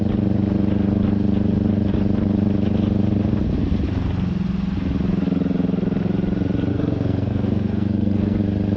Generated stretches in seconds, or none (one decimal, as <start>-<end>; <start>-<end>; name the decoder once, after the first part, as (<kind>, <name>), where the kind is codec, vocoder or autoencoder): 6.7-8.4 (codec, SNAC)